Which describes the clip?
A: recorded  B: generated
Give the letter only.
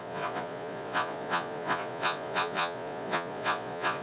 B